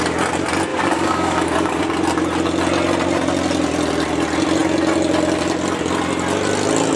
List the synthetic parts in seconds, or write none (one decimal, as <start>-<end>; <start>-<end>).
0.7-1.8